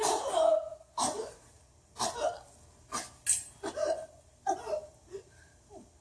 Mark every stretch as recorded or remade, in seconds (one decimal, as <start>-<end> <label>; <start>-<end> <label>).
0.0-6.0 recorded